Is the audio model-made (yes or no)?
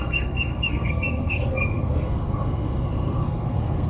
yes